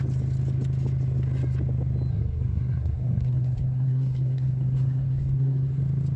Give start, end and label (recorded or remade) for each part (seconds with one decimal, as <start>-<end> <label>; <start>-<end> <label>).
0.0-2.1 recorded; 2.1-5.8 remade; 5.8-6.2 recorded